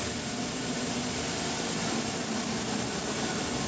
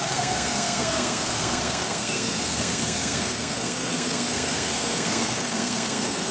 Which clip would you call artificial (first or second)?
second